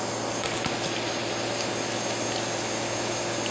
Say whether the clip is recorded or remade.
recorded